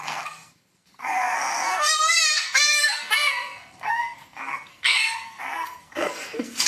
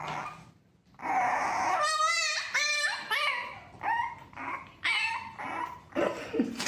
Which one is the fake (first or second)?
first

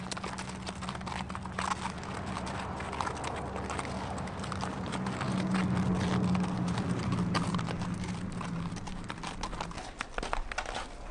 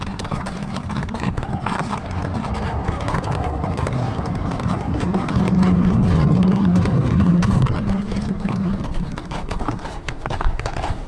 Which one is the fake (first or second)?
second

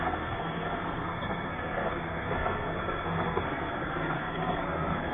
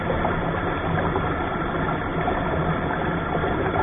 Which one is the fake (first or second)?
first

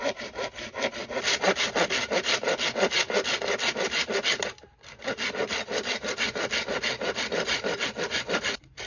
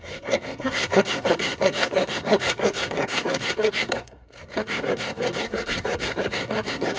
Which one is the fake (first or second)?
second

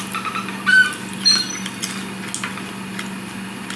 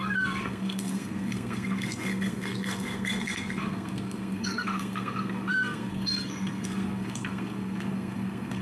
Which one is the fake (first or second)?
second